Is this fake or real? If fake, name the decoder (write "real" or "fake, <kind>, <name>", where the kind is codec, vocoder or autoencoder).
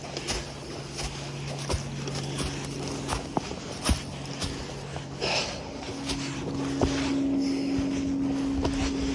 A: real